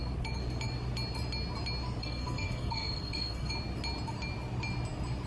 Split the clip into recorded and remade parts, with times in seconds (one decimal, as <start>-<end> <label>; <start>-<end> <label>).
0.0-2.0 recorded; 2.0-3.5 remade; 3.5-5.3 recorded